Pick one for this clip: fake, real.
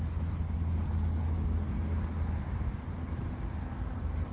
real